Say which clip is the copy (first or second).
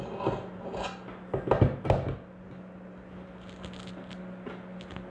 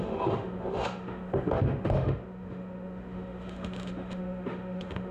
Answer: second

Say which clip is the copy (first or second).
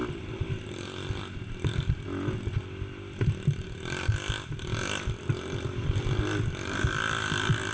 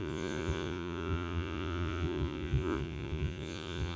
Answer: second